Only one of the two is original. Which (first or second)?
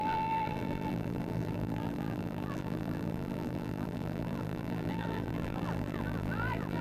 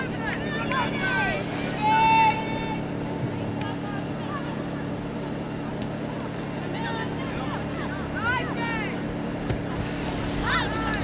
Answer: second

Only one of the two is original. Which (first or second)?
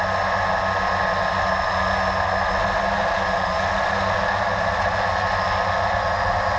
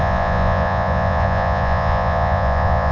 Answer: first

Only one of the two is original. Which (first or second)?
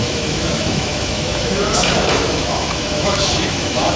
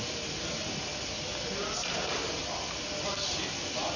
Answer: second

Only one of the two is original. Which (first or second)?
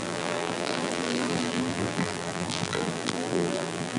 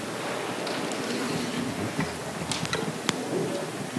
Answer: second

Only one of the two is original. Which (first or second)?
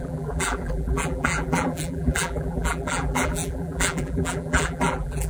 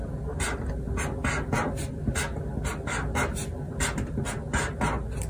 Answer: second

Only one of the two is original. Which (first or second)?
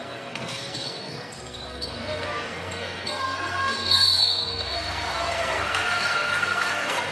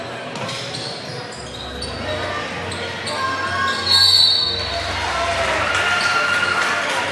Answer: second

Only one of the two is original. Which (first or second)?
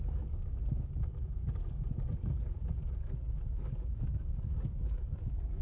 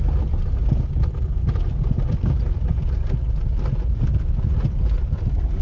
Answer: second